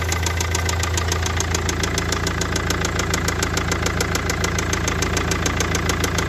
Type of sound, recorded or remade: recorded